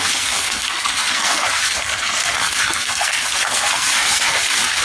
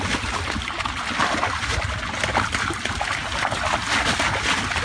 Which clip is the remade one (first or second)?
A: first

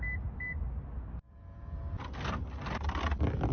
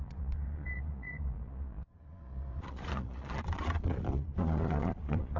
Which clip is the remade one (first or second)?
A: second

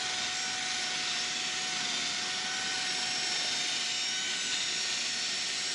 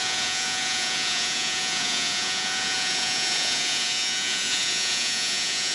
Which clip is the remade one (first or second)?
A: second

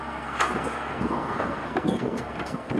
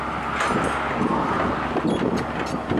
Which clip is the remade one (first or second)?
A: first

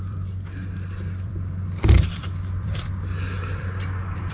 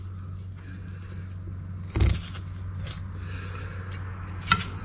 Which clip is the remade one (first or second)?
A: first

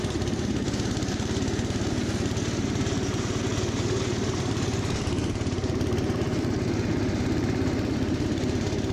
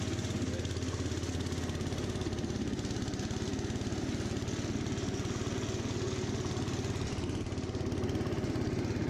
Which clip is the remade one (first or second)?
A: first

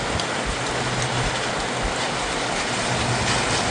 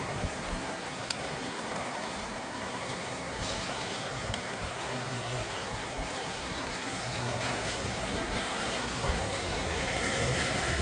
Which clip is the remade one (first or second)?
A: second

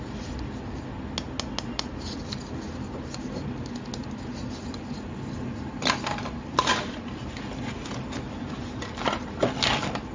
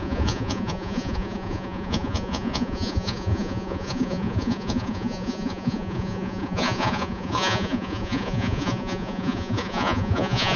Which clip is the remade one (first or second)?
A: second